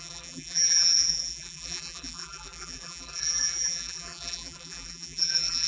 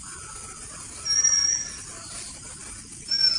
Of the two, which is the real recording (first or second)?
second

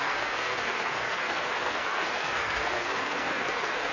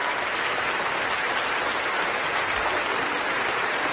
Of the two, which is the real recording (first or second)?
second